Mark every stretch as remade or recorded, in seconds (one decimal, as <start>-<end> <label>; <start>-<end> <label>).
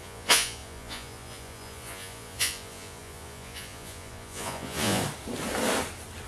0.0-5.0 remade; 5.0-6.3 recorded